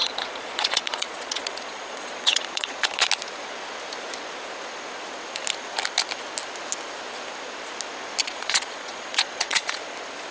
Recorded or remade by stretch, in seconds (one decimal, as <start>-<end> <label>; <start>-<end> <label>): 0.0-3.1 remade; 3.1-8.2 recorded; 8.2-9.8 remade; 9.8-10.3 recorded